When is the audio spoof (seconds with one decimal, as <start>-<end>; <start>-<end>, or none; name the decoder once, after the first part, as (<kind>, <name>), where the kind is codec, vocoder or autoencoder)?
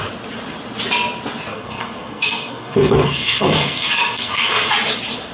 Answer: 1.5-4.7 (codec, SNAC)